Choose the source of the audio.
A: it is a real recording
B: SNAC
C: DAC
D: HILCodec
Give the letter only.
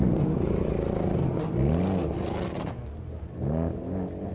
A